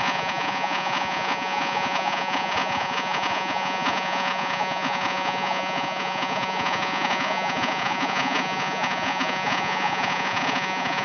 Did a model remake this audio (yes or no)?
yes